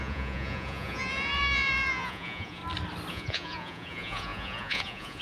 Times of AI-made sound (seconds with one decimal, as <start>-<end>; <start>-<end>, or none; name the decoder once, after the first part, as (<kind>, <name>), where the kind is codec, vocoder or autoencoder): 0.0-2.6 (vocoder, Vocos); 3.1-5.2

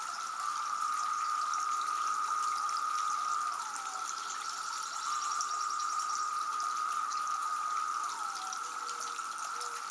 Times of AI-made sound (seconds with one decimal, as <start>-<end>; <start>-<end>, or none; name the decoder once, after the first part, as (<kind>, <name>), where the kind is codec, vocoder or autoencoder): 7.4-9.9 (vocoder, BigVGAN v2)

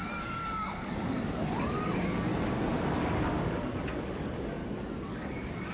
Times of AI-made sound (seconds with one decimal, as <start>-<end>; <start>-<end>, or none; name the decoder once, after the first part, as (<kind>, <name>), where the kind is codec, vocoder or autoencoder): 0.0-2.3 (codec, DAC); 2.8-4.6; 5.1-5.7

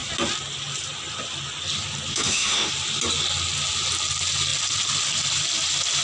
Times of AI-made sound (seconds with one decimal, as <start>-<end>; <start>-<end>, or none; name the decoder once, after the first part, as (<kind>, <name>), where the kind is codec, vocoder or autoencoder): 2.1-2.7 (autoencoder, DAC-VAE)

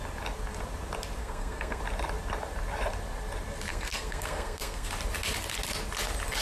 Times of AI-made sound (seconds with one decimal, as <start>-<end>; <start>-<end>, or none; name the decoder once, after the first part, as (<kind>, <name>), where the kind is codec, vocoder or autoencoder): 1.2-1.8 (codec, SNAC); 3.7-4.9

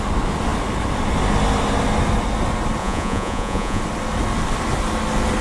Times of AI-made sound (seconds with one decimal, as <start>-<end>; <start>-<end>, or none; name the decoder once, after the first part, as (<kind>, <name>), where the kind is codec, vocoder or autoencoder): 2.8-3.8 (vocoder, Vocos)

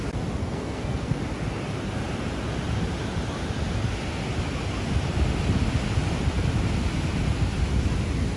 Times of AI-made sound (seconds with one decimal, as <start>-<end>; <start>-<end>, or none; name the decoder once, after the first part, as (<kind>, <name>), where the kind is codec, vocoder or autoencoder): 0.4-1.2 (codec, SNAC)

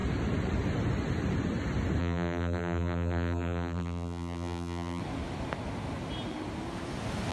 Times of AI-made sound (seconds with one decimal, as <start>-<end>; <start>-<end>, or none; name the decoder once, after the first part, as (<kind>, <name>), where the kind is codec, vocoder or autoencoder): 2.0-5.0 (vocoder, BigVGAN v2)